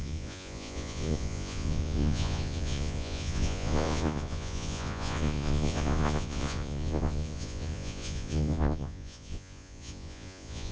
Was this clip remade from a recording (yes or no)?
yes